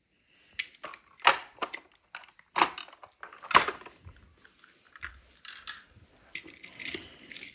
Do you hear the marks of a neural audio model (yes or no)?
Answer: no